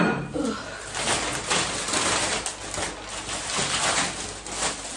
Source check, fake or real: real